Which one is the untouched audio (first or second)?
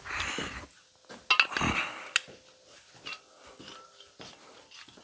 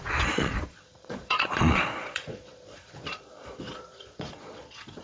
first